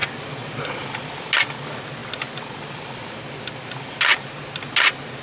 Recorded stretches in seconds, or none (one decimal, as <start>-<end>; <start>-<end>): 0.0-5.2